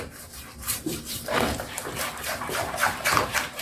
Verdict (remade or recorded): remade